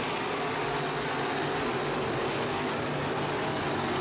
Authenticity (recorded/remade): recorded